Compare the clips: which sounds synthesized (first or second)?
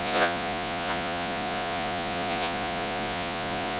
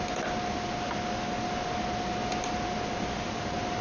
first